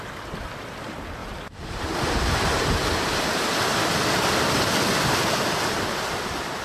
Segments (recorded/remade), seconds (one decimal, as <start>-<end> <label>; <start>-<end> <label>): 0.0-1.2 recorded; 1.2-2.7 remade; 2.7-6.6 recorded